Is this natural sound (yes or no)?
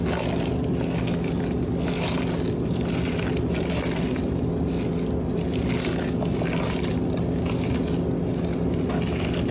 yes